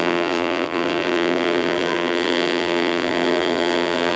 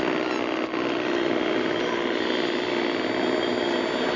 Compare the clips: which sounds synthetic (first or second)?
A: first